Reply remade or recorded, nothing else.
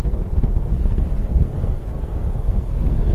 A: remade